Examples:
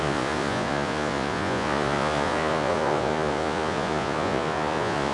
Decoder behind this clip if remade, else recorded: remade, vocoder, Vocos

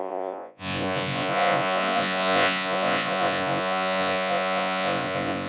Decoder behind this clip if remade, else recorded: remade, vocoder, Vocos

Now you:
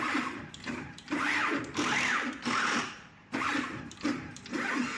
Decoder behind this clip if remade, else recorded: remade, vocoder, BigVGAN v2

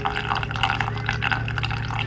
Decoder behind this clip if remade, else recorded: recorded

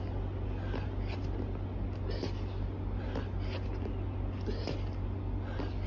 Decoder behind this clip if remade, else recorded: recorded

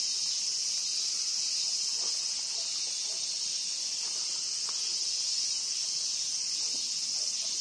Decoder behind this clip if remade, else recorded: recorded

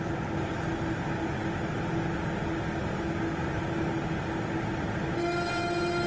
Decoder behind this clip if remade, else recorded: recorded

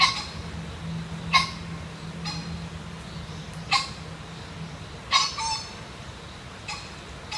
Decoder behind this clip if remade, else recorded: recorded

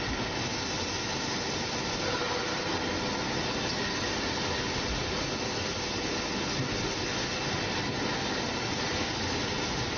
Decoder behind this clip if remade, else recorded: recorded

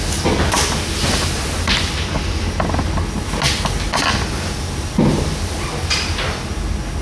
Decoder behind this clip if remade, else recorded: recorded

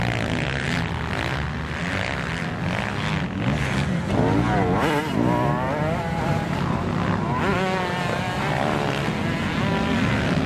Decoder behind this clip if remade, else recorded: recorded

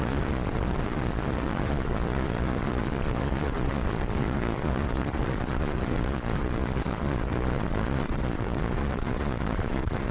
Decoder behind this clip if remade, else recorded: remade, vocoder, Vocos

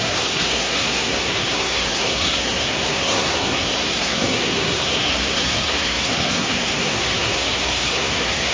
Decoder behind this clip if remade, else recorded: remade, codec, SNAC